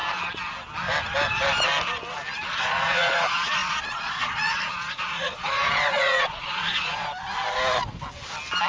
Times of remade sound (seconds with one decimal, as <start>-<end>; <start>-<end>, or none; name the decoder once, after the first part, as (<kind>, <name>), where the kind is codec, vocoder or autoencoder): 2.6-7.1 (vocoder, Vocos)